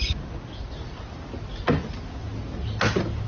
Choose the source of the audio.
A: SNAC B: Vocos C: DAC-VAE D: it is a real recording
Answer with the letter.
D